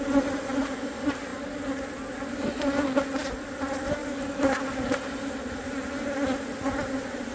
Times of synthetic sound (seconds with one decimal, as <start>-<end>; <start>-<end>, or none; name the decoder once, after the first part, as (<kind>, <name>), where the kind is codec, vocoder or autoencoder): 4.0-4.6 (codec, DAC)